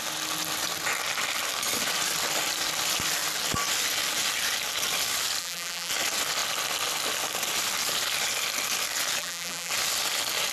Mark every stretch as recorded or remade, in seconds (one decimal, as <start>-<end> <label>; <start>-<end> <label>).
0.0-5.4 recorded; 5.4-5.9 remade; 5.9-9.2 recorded; 9.2-9.7 remade; 9.7-10.5 recorded